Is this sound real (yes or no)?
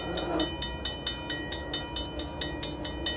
yes